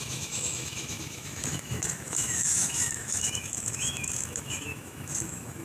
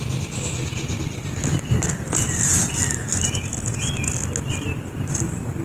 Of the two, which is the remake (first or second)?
first